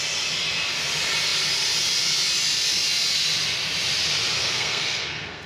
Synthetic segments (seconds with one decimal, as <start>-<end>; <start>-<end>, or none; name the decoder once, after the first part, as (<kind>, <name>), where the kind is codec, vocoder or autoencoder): 4.4-5.5 (codec, SNAC)

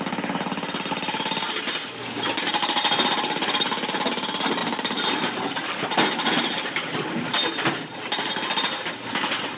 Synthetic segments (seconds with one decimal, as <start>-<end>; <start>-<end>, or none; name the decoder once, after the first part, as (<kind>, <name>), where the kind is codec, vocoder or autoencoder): none